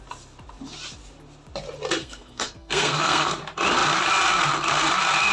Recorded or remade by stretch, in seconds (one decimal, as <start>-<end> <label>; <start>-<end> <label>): 0.0-2.0 recorded; 2.0-3.3 remade; 3.3-5.3 recorded